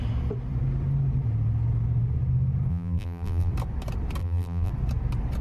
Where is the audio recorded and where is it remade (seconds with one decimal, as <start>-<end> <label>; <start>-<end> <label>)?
0.0-2.7 recorded; 2.7-3.5 remade; 3.5-4.2 recorded; 4.2-4.7 remade; 4.7-5.4 recorded